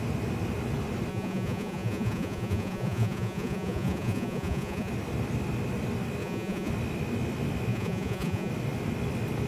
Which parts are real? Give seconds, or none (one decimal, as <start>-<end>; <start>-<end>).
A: 0.0-1.1; 4.9-6.2; 6.7-7.7; 8.5-9.5